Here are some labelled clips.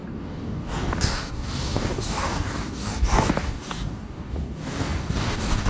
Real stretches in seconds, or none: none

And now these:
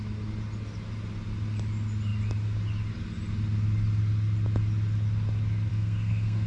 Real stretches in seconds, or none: 0.0-5.7

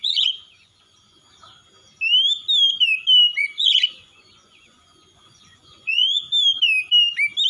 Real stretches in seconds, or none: 1.2-3.4; 6.2-7.5

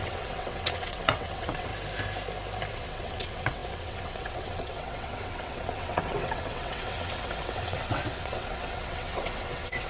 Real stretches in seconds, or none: 1.7-2.7

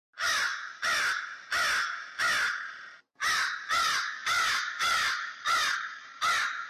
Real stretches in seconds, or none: 0.0-6.7